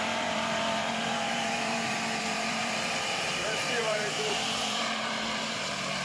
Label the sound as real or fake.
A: fake